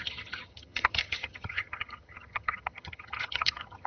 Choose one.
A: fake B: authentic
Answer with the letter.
A